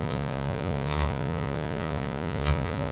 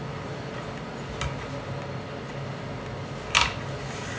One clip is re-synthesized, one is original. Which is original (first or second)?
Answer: second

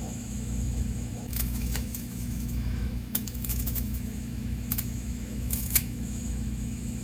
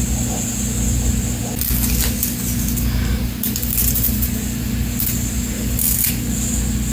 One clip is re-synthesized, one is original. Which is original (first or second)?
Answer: second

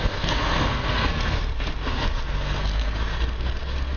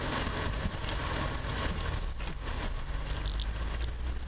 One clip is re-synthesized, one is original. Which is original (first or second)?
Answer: second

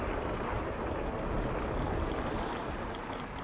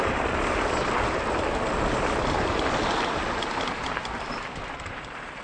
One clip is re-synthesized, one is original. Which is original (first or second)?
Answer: first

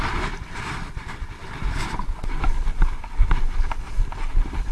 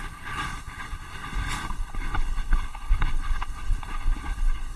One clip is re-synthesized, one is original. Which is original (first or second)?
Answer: first